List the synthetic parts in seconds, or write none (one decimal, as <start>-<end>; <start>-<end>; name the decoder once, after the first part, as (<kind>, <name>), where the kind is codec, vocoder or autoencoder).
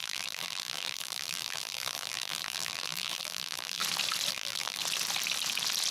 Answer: 0.0-3.8 (vocoder, BigVGAN v2); 4.3-4.8